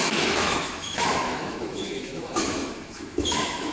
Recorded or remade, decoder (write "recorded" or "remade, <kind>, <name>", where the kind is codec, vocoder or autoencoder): remade, autoencoder, DAC-VAE